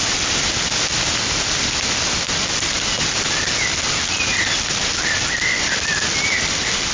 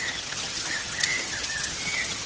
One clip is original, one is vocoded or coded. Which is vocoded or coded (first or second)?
second